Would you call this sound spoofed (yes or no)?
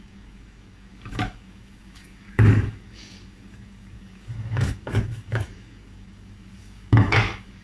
yes